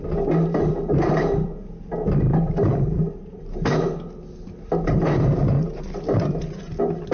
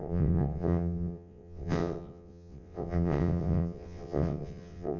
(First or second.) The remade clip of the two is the second